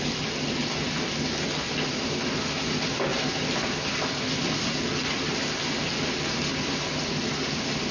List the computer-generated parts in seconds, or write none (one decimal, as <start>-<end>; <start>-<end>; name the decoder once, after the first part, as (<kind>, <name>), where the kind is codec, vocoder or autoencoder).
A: none